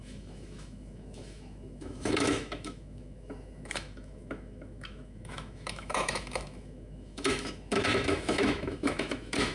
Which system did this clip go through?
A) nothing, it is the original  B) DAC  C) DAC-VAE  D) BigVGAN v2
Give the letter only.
C